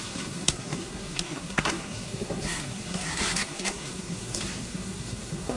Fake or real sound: fake